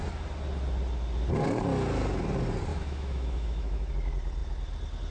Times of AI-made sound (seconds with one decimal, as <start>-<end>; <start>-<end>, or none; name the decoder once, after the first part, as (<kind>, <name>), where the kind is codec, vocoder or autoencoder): 2.7-3.9 (autoencoder, DAC-VAE)